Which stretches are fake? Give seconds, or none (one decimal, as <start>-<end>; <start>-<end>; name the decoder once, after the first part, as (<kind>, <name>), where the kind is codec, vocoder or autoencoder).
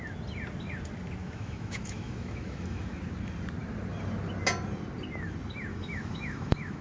1.2-3.0 (autoencoder, DAC-VAE); 5.7-6.8